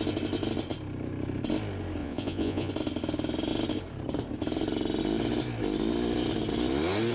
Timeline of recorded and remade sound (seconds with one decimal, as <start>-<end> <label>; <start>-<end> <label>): 0.0-2.0 recorded; 2.0-2.7 remade; 2.7-7.1 recorded